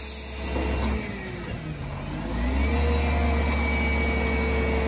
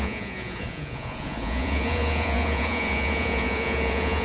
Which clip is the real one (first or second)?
first